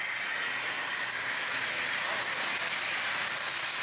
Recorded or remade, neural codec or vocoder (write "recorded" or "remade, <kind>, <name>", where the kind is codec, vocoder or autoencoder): recorded